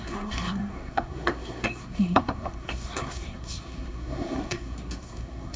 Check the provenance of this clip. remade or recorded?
remade